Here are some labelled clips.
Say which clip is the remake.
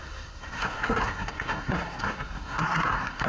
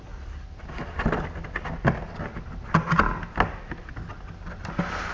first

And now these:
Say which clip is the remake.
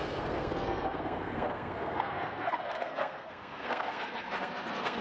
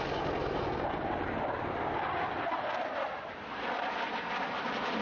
first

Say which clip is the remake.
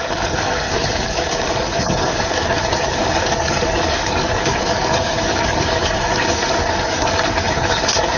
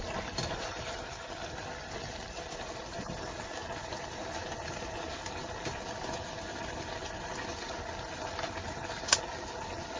first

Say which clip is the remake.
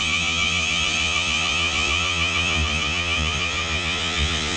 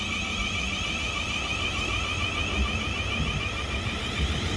first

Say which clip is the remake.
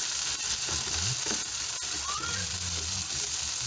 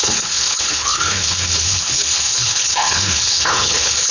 second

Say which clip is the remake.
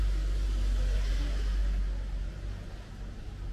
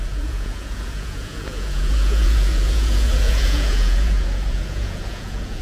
second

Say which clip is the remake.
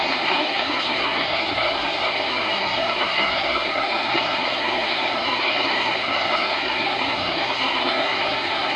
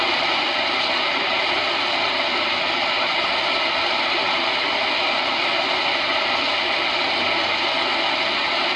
first